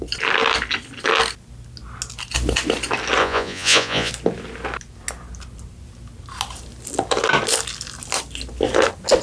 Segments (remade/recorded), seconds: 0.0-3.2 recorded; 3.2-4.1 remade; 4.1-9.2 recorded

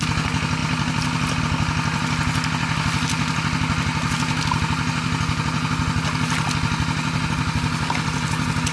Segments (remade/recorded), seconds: 0.0-8.7 recorded